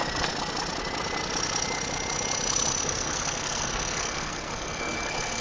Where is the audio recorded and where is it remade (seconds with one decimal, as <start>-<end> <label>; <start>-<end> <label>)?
0.0-2.8 recorded; 2.8-5.4 remade